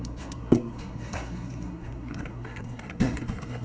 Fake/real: fake